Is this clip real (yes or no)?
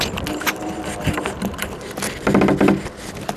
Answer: yes